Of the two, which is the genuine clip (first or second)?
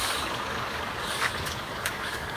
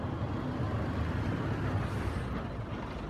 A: second